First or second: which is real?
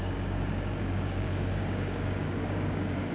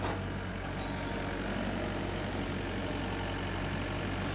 second